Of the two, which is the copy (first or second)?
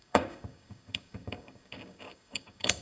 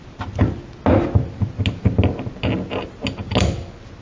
first